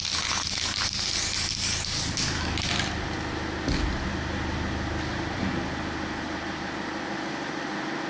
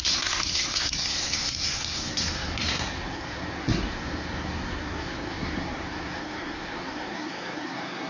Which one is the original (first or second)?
first